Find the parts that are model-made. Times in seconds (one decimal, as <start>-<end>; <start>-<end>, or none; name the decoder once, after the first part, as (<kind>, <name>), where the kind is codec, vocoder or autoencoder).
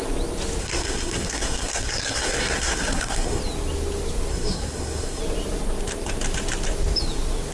0.6-3.4 (codec, SNAC); 4.3-5.2